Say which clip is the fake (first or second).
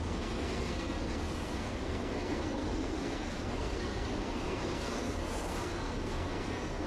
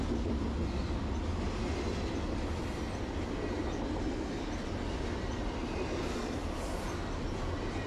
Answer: first